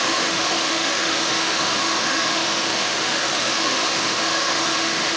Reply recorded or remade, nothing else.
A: remade